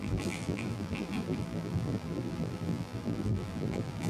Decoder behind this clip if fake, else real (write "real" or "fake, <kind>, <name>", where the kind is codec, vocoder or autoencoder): fake, vocoder, BigVGAN v2